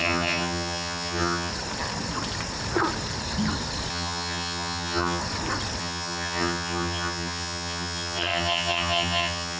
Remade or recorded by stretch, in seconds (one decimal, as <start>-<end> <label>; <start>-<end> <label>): 0.0-1.5 remade; 1.5-3.9 recorded; 3.9-5.2 remade; 5.2-5.8 recorded; 5.8-9.6 remade